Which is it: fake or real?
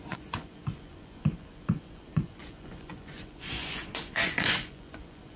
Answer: fake